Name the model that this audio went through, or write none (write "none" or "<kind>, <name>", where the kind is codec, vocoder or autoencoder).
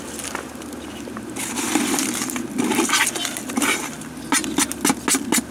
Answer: none